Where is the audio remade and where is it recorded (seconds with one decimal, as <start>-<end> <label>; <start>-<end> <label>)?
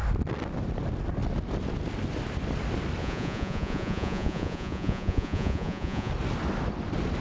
0.0-3.0 recorded; 3.0-6.1 remade; 6.1-7.2 recorded